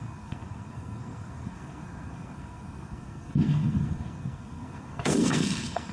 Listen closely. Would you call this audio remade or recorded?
remade